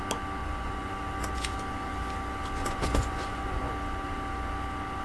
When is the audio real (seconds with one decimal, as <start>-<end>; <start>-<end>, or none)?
0.0-0.4; 0.9-2.6; 3.7-5.0